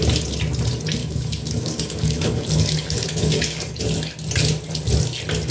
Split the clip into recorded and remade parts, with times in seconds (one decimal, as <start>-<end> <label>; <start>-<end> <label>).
0.0-1.0 recorded; 1.0-3.8 remade; 3.8-5.5 recorded